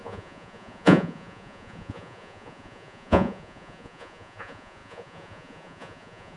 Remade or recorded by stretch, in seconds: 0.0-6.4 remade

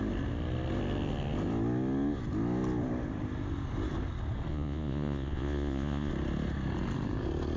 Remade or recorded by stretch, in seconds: 0.0-4.5 recorded; 4.5-6.1 remade; 6.1-7.6 recorded

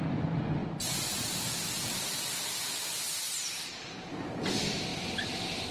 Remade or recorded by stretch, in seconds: 0.0-0.6 recorded; 0.6-3.9 remade; 3.9-5.7 recorded